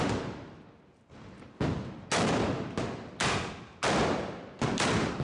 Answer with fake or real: real